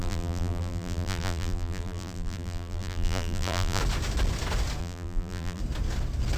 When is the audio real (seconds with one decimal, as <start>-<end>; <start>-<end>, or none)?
3.8-4.8; 5.6-6.4